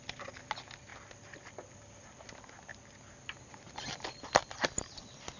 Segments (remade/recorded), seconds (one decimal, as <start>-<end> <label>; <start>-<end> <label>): 0.0-5.4 recorded